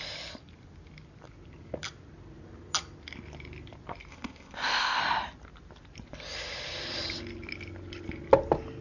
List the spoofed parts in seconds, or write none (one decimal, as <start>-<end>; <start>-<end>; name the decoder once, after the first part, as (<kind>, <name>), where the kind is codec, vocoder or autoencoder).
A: 4.1-5.0 (codec, ZipCodec)